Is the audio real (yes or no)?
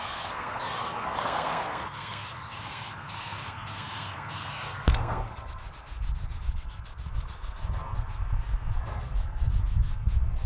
no